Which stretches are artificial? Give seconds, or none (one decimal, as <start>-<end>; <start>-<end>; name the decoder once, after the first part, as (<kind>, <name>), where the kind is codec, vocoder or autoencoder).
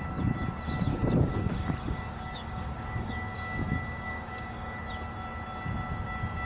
0.9-4.8 (codec, DAC)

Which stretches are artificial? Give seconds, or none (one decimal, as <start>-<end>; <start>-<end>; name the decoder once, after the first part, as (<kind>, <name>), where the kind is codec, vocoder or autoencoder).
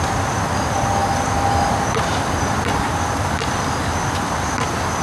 none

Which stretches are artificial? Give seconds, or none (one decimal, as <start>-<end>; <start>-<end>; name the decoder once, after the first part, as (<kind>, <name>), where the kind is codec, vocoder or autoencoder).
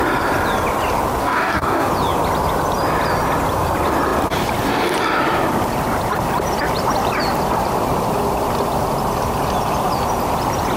1.2-1.9 (codec, DAC)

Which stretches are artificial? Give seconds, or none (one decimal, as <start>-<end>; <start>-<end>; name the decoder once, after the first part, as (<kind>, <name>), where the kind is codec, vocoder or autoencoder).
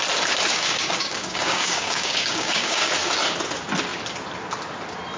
0.5-2.9 (codec, DAC)